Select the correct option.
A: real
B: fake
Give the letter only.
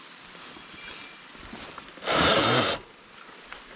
A